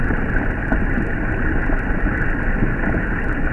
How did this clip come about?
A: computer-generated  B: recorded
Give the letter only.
B